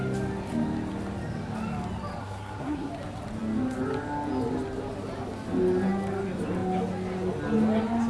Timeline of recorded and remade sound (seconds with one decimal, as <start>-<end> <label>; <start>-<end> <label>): 0.0-2.2 recorded; 2.2-2.9 remade; 2.9-8.1 recorded